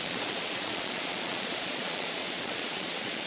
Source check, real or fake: fake